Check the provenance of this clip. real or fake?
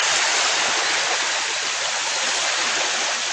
real